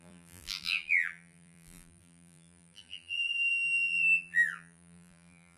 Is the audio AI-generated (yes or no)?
yes